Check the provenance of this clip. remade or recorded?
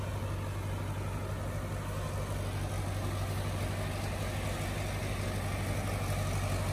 recorded